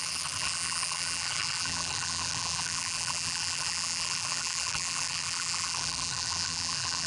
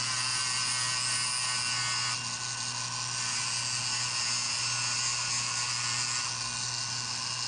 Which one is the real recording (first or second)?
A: second